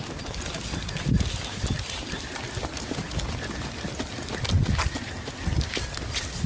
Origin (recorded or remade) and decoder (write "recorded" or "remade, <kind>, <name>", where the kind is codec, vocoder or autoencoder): recorded